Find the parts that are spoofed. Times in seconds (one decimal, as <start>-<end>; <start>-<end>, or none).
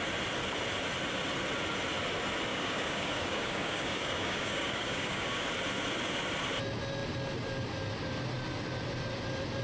2.5-5.5